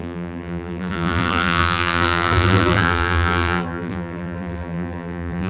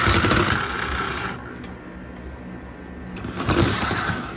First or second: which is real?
second